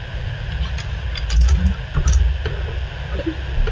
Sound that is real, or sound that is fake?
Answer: real